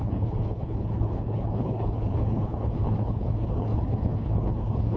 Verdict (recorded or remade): remade